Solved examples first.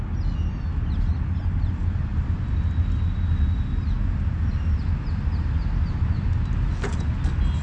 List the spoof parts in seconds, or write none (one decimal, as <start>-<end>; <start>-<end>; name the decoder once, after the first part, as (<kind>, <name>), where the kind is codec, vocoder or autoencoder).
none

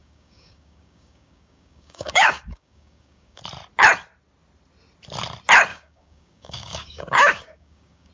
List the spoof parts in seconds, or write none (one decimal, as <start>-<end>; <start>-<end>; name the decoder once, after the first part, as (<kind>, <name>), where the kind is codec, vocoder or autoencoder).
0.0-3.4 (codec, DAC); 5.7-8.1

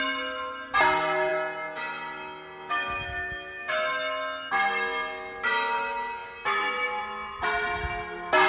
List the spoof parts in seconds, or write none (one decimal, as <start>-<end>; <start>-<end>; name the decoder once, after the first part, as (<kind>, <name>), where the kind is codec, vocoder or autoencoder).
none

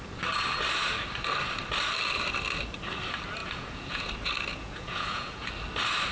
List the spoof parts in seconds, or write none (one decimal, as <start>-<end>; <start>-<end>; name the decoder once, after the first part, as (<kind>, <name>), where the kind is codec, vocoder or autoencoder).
3.4-4.1 (vocoder, Vocos); 4.5-5.5

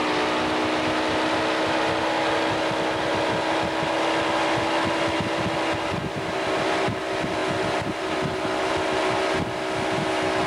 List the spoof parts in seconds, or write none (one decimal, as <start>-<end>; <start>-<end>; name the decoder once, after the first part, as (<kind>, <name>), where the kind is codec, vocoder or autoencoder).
none

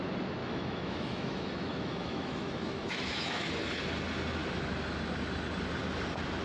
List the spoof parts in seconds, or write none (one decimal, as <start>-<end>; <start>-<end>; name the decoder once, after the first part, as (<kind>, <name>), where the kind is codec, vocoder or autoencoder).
0.4-3.5 (autoencoder, DAC-VAE)

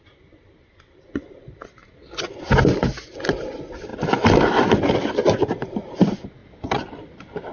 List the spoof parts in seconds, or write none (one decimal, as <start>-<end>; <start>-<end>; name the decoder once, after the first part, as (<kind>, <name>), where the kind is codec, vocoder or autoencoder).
1.8-2.3 (vocoder, BigVGAN v2); 3.9-5.6; 6.4-7.1

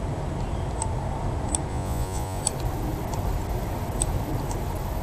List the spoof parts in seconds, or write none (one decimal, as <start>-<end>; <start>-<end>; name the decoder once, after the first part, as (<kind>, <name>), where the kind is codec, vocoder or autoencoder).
1.7-2.4 (vocoder, Vocos)